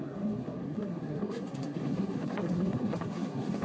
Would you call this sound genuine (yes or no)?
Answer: no